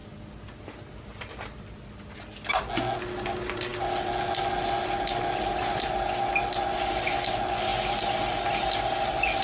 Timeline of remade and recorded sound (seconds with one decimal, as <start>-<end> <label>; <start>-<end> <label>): 0.0-9.4 recorded